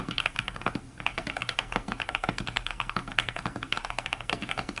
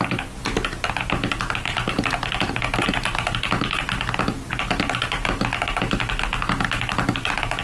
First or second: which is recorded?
second